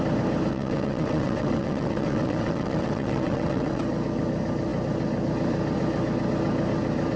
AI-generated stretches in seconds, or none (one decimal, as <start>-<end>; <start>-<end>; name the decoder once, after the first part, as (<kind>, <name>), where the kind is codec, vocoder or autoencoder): 0.5-3.8 (vocoder, WaveNeXt)